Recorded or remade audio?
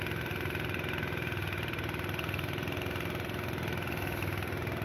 recorded